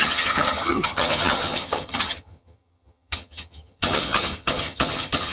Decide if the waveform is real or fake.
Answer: fake